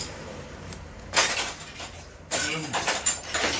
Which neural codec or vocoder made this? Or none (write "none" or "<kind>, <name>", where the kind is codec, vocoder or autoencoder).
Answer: vocoder, BigVGAN v2